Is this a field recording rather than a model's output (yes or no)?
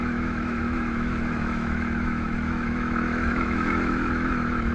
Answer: no